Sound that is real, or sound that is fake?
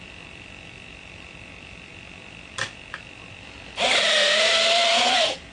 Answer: fake